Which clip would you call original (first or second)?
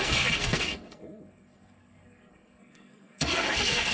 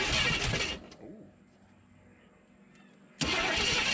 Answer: second